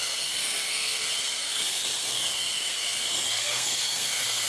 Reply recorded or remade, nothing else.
remade